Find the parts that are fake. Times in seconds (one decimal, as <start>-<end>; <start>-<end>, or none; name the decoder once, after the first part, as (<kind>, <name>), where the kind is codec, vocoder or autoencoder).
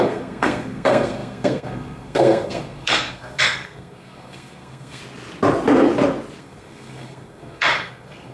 0.0-5.0 (codec, SNAC); 6.4-8.3